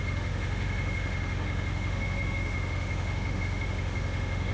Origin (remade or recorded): remade